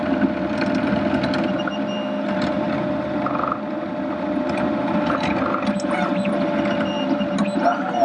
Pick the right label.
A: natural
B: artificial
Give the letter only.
A